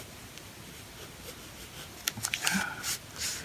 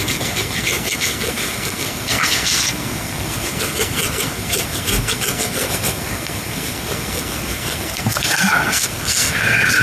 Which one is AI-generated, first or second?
second